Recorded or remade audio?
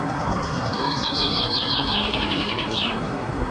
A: remade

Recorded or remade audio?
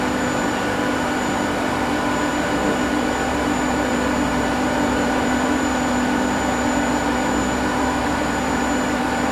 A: remade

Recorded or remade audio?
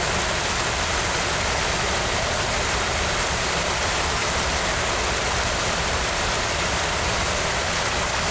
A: recorded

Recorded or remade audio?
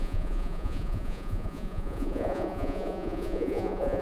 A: remade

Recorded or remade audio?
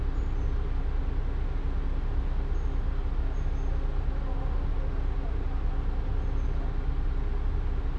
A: recorded